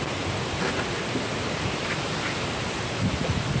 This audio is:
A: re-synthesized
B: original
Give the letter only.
B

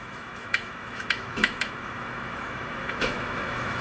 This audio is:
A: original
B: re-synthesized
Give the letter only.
B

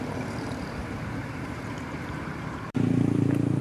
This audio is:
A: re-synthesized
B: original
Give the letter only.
A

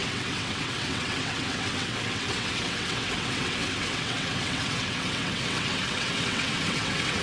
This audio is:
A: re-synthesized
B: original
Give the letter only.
A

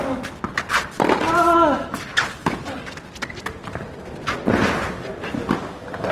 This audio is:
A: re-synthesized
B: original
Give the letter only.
B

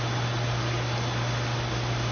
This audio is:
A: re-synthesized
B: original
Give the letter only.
B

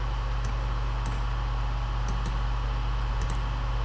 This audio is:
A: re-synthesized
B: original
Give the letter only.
B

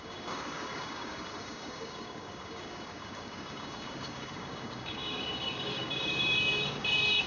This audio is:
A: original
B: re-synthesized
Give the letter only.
B